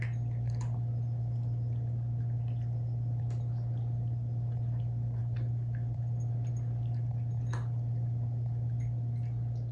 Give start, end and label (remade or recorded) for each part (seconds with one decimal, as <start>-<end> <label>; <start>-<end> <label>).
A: 0.0-9.7 recorded